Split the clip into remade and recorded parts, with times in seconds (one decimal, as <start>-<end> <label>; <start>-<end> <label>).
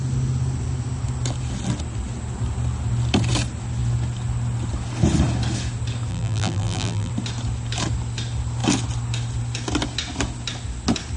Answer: 0.0-6.1 recorded; 6.1-7.1 remade; 7.1-11.2 recorded